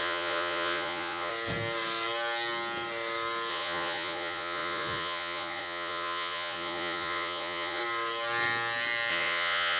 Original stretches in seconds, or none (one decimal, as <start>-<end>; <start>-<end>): 1.3-3.5; 7.8-9.1